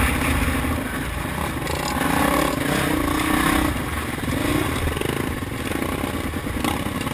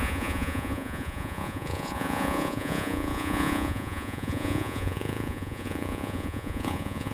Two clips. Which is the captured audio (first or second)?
first